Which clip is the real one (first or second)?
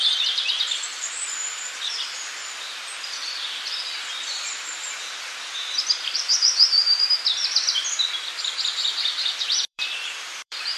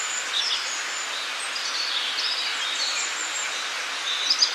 second